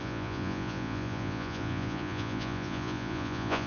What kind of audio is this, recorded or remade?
remade